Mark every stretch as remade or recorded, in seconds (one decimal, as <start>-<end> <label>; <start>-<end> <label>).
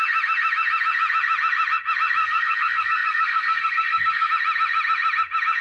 0.0-2.2 recorded; 2.2-4.3 remade; 4.3-5.6 recorded